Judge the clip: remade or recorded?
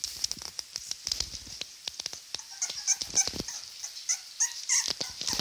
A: recorded